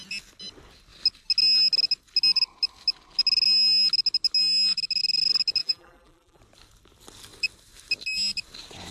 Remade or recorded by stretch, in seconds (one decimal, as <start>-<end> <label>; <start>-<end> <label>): 0.0-5.6 recorded; 5.6-6.4 remade; 6.4-8.9 recorded